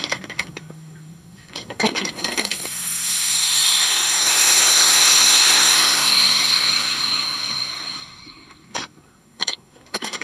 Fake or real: fake